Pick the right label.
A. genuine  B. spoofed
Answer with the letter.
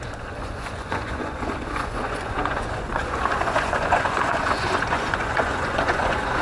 B